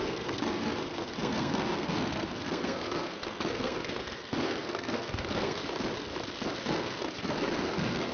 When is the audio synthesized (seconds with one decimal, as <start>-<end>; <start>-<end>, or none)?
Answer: 0.0-5.6; 6.6-8.1